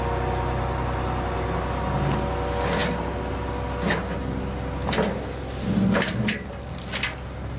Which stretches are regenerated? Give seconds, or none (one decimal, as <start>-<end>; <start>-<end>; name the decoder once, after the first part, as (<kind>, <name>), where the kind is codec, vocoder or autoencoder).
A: none

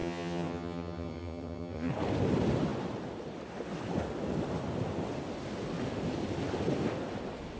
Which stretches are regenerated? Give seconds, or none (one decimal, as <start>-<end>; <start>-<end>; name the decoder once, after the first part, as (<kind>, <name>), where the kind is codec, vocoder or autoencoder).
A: 0.0-1.9 (vocoder, HiFi-GAN)

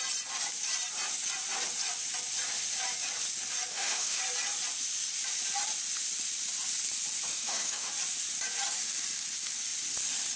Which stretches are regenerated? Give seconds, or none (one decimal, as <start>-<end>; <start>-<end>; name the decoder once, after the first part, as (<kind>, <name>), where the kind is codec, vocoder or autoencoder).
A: 3.7-4.2 (autoencoder, DAC-VAE); 7.3-7.9

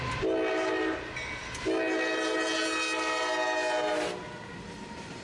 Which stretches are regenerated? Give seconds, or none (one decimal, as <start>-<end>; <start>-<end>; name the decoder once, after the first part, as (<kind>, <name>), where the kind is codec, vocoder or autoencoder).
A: none